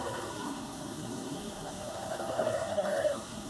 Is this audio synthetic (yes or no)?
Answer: yes